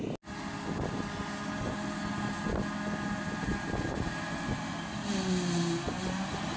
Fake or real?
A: real